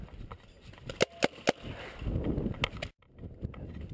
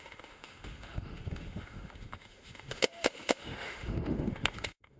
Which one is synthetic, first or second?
second